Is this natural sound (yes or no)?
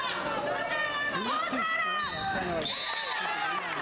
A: yes